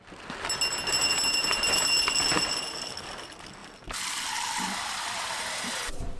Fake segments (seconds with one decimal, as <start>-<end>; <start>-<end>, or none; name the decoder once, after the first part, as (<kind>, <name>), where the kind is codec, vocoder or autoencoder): none